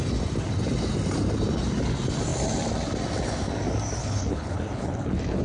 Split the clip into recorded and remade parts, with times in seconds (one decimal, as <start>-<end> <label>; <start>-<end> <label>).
0.0-4.0 recorded; 4.0-5.4 remade